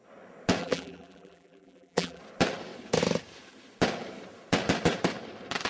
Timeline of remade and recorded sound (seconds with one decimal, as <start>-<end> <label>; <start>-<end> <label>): 0.0-0.6 recorded; 0.6-2.2 remade; 2.2-5.7 recorded